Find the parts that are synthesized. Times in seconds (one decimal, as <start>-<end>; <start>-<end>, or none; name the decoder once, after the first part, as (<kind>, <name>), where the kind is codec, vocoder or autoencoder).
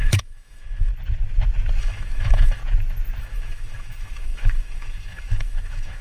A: 0.0-0.9 (autoencoder, DAC-VAE); 1.8-2.6; 3.2-6.0